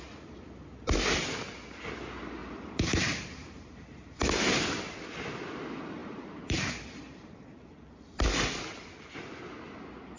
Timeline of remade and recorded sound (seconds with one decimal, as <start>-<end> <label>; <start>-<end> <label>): 0.0-2.4 recorded; 2.4-4.3 remade; 4.3-6.0 recorded; 6.0-7.5 remade; 7.5-10.2 recorded